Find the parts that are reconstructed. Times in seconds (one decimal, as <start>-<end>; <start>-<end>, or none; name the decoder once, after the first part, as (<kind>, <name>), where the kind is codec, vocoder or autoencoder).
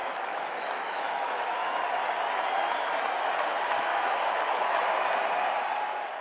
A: 0.0-1.8 (autoencoder, DAC-VAE); 3.9-4.8